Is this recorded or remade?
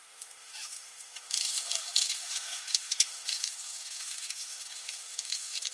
remade